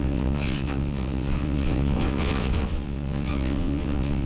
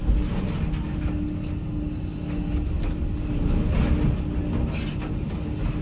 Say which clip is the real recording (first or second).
second